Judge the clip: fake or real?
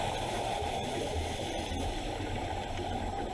real